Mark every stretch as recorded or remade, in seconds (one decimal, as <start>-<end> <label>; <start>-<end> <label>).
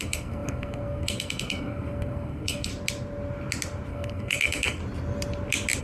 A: 0.0-2.7 remade; 2.7-3.9 recorded; 3.9-4.8 remade; 4.8-5.8 recorded